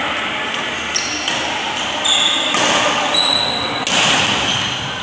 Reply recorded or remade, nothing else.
recorded